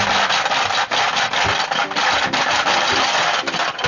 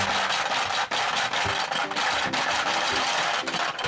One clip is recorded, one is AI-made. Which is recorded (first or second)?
second